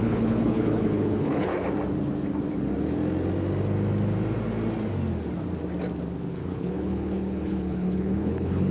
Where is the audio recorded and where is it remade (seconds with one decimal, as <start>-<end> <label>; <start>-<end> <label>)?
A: 0.0-1.5 remade; 1.5-6.3 recorded; 6.3-8.7 remade